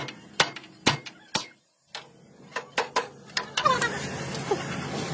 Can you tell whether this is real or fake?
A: real